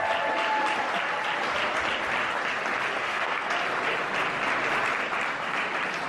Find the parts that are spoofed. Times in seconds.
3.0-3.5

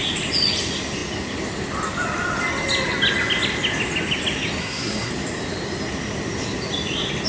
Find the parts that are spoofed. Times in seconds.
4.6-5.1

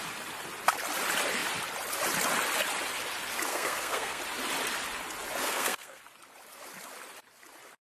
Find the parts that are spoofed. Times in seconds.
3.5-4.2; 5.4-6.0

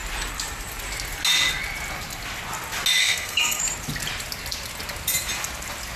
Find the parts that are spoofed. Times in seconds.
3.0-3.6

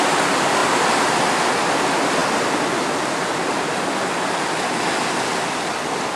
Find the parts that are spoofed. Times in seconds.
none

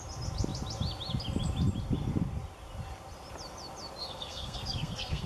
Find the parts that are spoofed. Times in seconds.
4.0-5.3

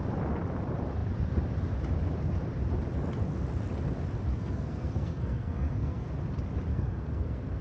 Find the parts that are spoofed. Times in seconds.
4.3-6.1; 6.7-7.6

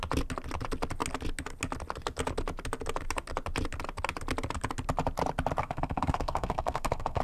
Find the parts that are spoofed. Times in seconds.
5.6-7.2